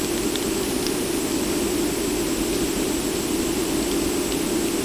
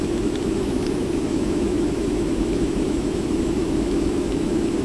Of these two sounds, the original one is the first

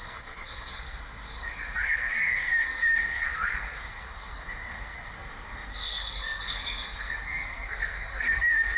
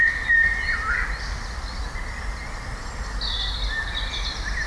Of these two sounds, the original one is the second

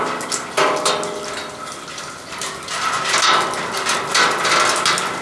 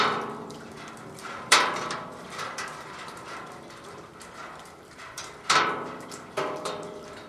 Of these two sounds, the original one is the first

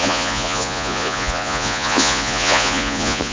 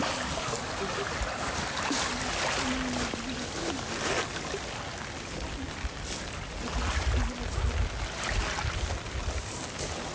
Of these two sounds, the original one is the second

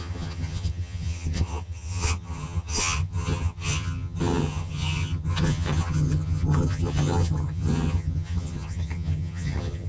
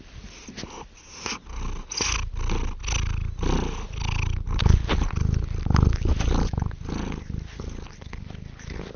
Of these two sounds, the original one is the second